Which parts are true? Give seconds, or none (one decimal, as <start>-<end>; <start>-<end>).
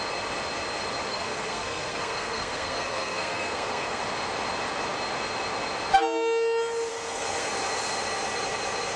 0.0-1.1; 4.0-6.9; 7.5-9.0